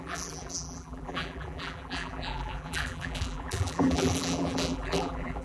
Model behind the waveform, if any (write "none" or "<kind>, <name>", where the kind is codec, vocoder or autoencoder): vocoder, BigVGAN v2